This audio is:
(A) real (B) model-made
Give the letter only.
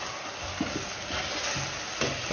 A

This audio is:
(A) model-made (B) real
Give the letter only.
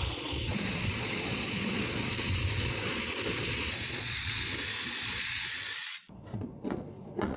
A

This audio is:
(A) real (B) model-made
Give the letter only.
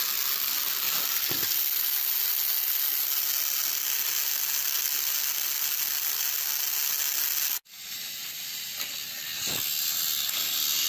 A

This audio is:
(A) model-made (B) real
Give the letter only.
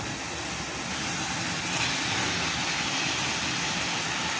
B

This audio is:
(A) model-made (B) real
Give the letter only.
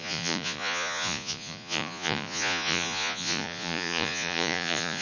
A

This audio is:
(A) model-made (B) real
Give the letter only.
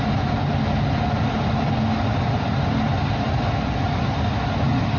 B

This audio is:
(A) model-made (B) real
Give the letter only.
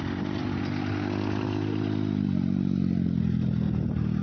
B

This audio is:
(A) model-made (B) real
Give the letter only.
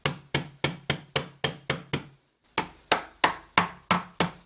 B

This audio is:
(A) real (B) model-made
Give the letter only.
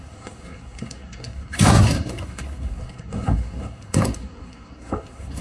B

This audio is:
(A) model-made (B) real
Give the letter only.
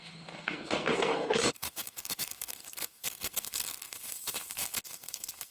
A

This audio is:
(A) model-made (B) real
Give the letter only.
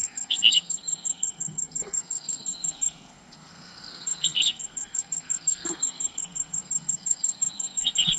A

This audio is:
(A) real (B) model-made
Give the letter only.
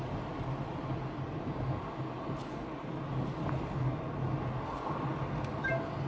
A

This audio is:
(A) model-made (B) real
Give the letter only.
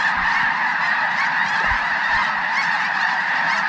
A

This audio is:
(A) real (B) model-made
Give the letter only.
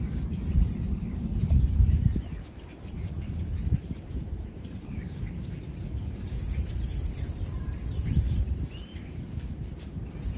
B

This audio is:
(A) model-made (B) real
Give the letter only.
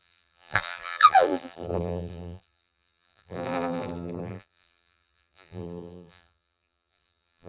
A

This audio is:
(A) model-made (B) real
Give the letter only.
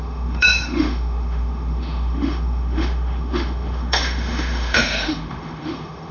A